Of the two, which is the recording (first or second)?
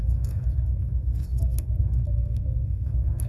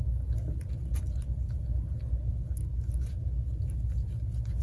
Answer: second